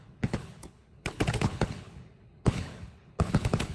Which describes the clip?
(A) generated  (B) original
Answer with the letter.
A